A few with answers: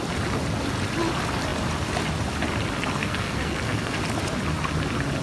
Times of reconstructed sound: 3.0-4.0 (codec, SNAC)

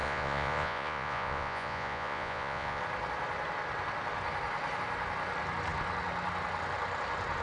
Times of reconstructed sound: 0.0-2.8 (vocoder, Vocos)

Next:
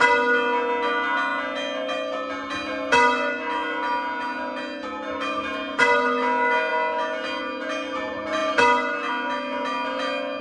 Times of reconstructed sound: none

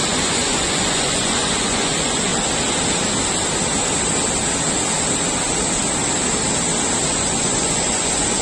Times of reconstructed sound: 0.0-2.3 (vocoder, Vocos); 7.1-8.4

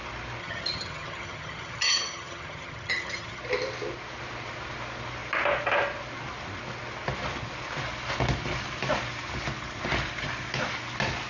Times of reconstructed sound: 0.4-3.4 (vocoder, HiFi-GAN)